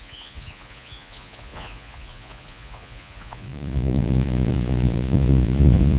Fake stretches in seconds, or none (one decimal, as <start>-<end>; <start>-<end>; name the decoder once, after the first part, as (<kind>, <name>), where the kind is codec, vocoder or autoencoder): 0.0-6.0 (vocoder, Vocos)